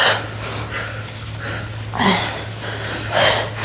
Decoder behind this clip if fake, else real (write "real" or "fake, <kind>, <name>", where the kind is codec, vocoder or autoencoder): real